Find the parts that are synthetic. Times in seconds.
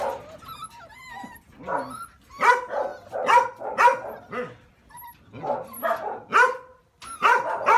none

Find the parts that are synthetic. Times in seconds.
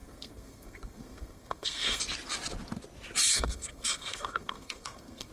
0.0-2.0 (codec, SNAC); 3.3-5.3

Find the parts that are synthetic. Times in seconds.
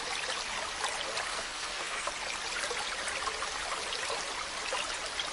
1.3-2.1 (codec, SNAC)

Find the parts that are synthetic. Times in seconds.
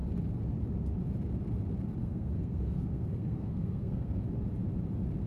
2.0-4.2 (codec, SNAC)